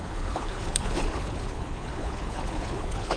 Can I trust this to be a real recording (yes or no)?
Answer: no